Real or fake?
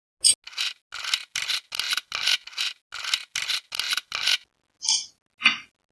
real